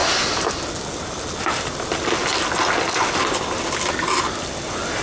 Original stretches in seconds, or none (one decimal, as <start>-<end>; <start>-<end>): 0.0-5.0